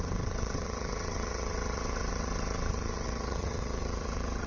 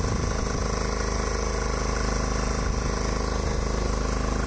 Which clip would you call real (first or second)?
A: second